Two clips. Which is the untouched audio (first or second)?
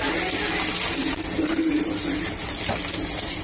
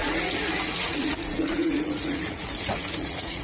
first